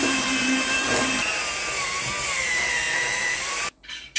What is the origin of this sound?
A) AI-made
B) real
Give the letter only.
A